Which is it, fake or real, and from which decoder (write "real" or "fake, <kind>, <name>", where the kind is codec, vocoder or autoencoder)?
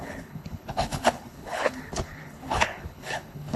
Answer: fake, codec, HILCodec